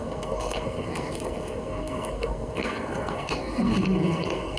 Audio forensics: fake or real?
fake